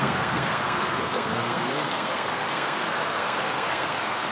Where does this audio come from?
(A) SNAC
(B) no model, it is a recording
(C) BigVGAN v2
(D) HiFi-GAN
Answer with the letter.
A